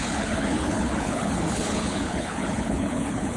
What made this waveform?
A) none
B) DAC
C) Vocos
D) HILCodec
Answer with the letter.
D